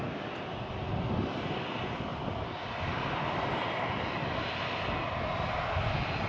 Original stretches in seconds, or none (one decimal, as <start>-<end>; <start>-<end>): 0.0-6.3